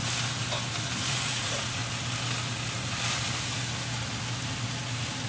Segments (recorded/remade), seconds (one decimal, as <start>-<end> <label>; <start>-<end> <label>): 0.0-1.1 recorded; 1.1-1.8 remade; 1.8-5.3 recorded